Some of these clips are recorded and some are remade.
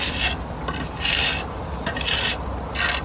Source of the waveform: recorded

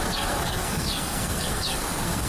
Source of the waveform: remade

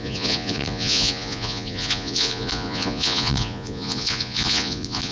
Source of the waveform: remade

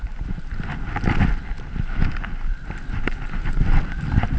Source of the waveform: recorded